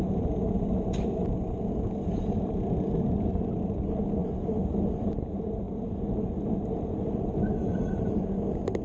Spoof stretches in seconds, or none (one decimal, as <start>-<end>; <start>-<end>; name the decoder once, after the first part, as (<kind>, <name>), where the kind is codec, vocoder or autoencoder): none